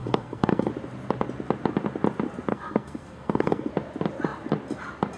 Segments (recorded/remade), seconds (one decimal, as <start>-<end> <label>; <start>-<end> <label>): 0.0-0.7 remade; 0.7-2.5 recorded; 2.5-3.7 remade; 3.7-5.2 recorded

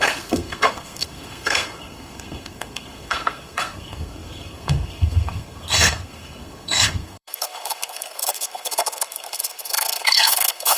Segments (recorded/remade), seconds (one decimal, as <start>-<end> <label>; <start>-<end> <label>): 0.0-10.8 remade

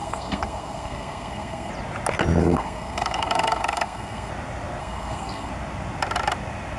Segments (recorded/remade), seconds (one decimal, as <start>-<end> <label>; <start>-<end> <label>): 0.0-1.7 remade; 1.7-2.4 recorded; 2.4-4.3 remade; 4.3-4.8 recorded; 4.8-5.5 remade; 5.5-6.8 recorded

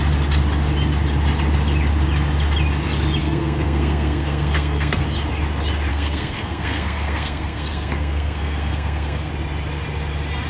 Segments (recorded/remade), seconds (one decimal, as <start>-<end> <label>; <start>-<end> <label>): 0.0-3.2 recorded; 3.2-5.0 remade; 5.0-5.9 recorded; 5.9-9.3 remade; 9.3-10.5 recorded

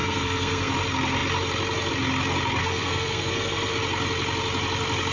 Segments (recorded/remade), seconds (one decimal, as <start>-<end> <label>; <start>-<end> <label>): 0.0-0.7 remade; 0.7-2.6 recorded; 2.6-3.7 remade; 3.7-5.1 recorded

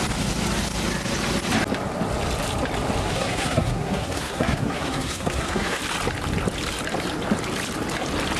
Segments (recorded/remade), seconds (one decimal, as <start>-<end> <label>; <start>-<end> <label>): 0.0-3.0 recorded; 3.0-5.8 remade; 5.8-8.4 recorded

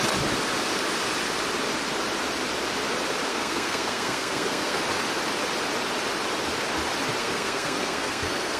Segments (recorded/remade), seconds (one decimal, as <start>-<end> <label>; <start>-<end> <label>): 0.0-3.3 recorded; 3.3-4.8 remade; 4.8-7.2 recorded; 7.2-8.6 remade